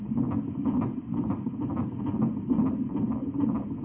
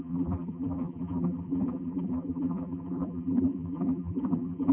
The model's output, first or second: second